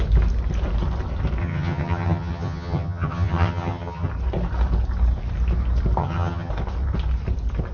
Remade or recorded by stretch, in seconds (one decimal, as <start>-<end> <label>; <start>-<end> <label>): 0.0-1.4 recorded; 1.4-4.1 remade; 4.1-6.0 recorded; 6.0-6.5 remade; 6.5-7.7 recorded